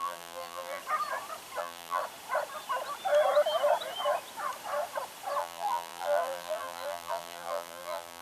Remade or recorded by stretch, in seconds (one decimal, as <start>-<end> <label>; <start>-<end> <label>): 0.0-0.8 remade; 0.8-1.6 recorded; 1.6-2.0 remade; 2.0-5.4 recorded; 5.4-8.2 remade

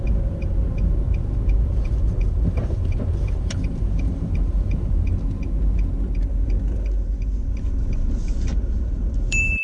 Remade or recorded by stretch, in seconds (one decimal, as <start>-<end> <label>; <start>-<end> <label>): 0.0-5.1 remade; 5.1-8.2 recorded; 8.2-9.6 remade

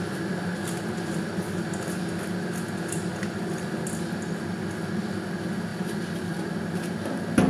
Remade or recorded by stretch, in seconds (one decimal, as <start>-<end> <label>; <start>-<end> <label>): 0.0-5.7 recorded; 5.7-6.6 remade; 6.6-7.5 recorded

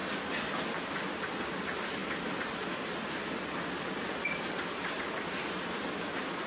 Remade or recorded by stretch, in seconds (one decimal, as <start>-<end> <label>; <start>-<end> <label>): 0.0-6.5 recorded